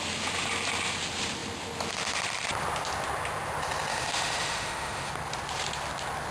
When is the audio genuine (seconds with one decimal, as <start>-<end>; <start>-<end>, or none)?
0.0-3.9; 5.1-6.3